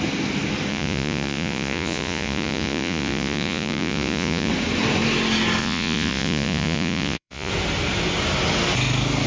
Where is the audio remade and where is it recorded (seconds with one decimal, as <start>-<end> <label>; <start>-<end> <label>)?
0.0-0.7 recorded; 0.7-4.5 remade; 4.5-5.6 recorded; 5.6-7.5 remade; 7.5-9.3 recorded